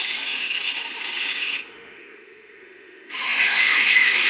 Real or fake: fake